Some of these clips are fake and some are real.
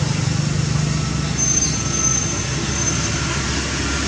real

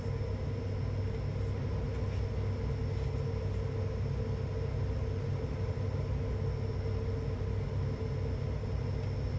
real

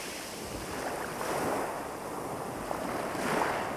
real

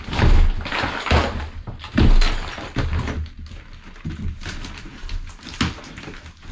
real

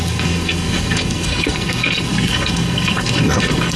fake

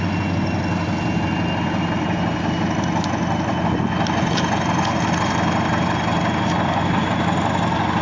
real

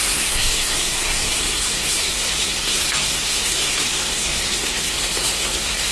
fake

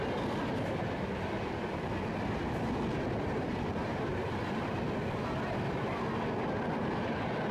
real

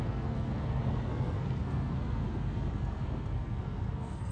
fake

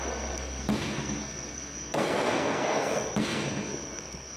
fake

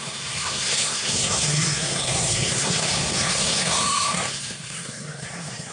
fake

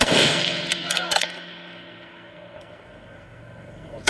fake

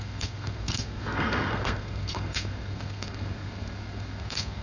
fake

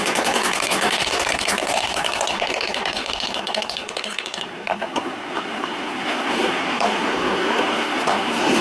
fake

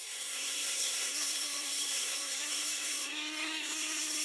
fake